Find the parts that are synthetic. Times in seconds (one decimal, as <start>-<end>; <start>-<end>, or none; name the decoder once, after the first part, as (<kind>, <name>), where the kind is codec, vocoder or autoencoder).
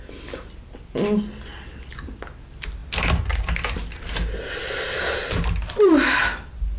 none